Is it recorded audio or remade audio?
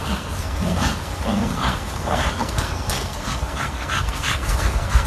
remade